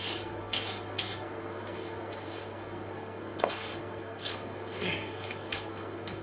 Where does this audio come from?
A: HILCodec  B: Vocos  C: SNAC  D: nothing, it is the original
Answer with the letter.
C